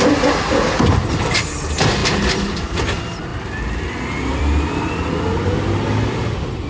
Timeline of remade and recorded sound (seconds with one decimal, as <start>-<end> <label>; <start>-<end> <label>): 0.0-6.7 recorded